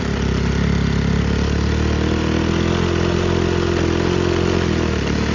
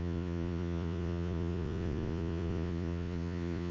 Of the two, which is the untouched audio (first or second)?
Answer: first